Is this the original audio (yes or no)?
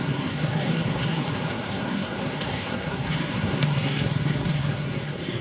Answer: no